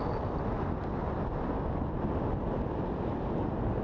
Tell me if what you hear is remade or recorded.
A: recorded